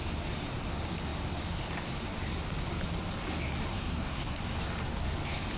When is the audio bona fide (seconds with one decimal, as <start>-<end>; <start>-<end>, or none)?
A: 0.0-3.7; 4.4-5.6